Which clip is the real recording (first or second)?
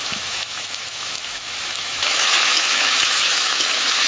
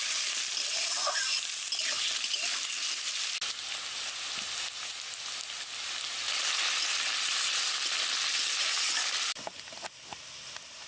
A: second